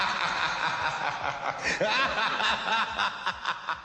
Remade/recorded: recorded